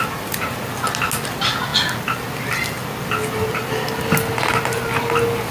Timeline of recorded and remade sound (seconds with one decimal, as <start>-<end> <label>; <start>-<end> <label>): 0.0-5.5 recorded